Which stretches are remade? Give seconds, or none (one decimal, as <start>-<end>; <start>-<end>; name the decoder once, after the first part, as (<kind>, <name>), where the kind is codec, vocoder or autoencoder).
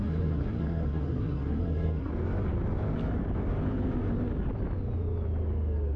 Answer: 0.0-2.1 (codec, SNAC)